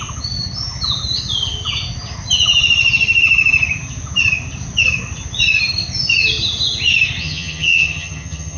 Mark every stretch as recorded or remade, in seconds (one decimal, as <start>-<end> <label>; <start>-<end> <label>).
0.0-7.2 recorded; 7.2-8.6 remade